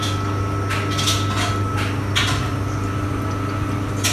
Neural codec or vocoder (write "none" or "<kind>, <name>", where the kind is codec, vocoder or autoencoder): none